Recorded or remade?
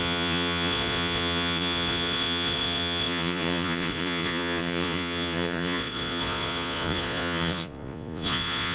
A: remade